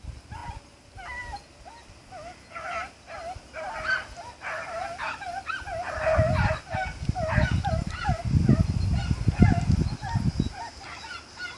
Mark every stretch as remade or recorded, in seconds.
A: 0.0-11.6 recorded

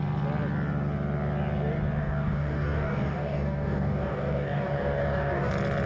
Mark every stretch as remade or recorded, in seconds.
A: 0.0-2.0 recorded; 2.0-5.5 remade; 5.5-5.9 recorded

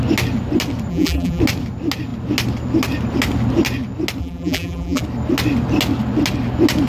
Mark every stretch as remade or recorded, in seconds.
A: 0.0-0.9 recorded; 0.9-1.4 remade; 1.4-4.2 recorded; 4.2-5.0 remade; 5.0-6.9 recorded

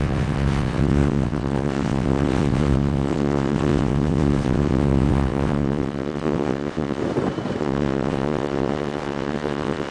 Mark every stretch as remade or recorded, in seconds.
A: 0.0-7.0 remade; 7.0-7.6 recorded; 7.6-9.9 remade

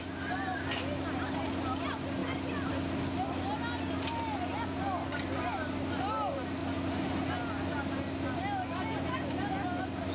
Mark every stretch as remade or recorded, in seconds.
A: 0.0-10.1 recorded